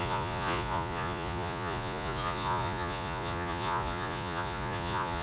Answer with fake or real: fake